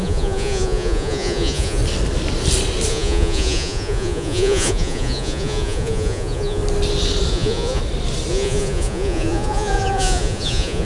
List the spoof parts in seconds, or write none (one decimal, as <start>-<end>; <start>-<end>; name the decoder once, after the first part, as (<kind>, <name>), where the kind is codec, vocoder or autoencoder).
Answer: 0.0-1.8 (vocoder, Vocos); 2.9-6.6; 7.3-7.8; 8.3-10.8